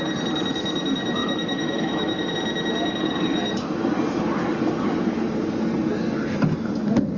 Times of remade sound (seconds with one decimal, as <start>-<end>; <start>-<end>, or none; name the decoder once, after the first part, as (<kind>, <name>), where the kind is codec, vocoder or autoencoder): 1.2-2.3 (autoencoder, DAC-VAE)